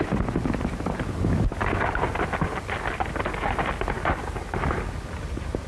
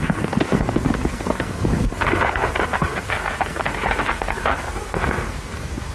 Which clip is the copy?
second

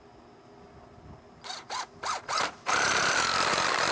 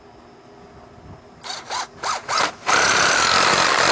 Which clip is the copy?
first